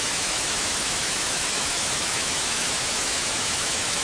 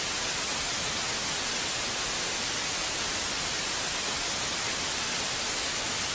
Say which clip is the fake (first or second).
first